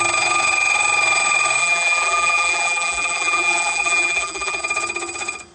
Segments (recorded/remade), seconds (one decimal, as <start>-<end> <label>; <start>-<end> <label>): 0.0-1.6 recorded; 1.6-4.6 remade; 4.6-5.5 recorded